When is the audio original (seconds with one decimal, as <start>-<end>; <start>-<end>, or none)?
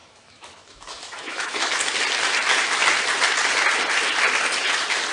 1.7-5.1